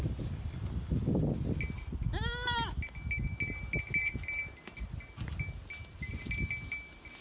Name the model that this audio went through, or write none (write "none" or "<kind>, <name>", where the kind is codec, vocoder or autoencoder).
none